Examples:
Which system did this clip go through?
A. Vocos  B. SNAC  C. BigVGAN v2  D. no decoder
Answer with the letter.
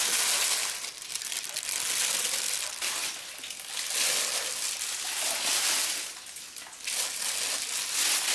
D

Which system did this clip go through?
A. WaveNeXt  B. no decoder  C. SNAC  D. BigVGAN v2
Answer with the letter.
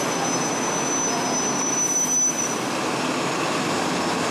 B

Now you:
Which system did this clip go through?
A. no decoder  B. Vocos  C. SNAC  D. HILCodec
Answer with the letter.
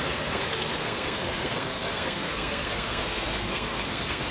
C